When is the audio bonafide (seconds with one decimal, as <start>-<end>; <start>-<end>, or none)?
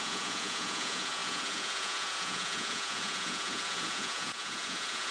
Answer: none